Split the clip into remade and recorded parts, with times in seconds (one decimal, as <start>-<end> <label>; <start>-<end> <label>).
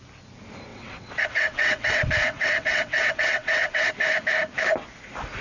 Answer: 0.0-0.7 recorded; 0.7-3.9 remade; 3.9-5.4 recorded